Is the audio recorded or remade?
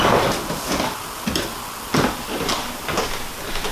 recorded